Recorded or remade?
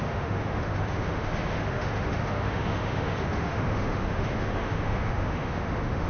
remade